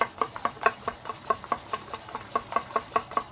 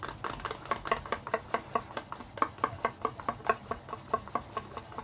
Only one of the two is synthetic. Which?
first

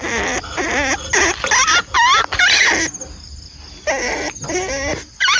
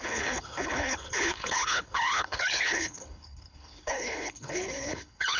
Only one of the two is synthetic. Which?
second